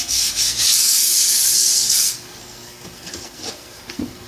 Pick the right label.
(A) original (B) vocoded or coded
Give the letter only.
B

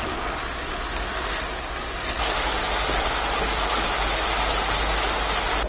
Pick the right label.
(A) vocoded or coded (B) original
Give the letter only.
B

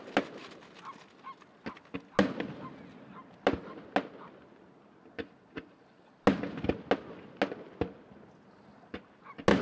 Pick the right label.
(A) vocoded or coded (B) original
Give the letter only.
B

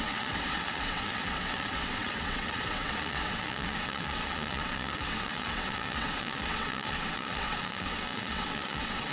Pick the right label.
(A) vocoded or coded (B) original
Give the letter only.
A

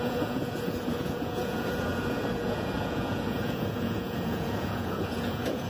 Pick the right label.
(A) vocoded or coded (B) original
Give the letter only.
A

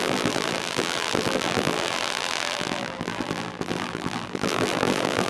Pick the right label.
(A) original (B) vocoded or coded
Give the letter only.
B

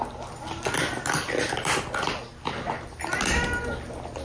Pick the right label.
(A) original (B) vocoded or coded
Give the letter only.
A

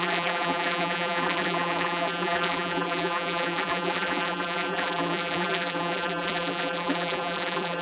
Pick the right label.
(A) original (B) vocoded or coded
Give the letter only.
B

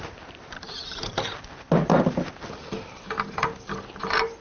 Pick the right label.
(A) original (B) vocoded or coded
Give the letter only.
B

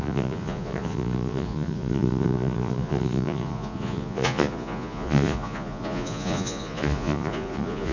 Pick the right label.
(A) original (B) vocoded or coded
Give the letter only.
B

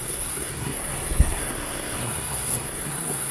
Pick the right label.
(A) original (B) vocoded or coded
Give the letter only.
B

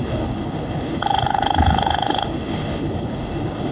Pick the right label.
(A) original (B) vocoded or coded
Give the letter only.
B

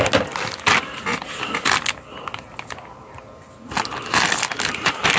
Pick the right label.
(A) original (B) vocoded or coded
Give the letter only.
A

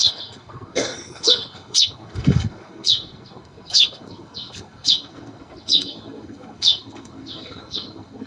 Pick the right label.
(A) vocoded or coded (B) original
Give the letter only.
A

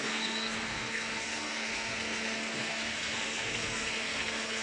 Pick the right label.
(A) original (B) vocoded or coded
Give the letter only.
B